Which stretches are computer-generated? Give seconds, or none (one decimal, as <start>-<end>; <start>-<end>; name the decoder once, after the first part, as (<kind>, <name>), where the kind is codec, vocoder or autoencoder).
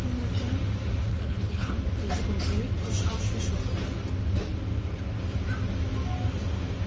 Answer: 1.1-1.7 (codec, HILCodec)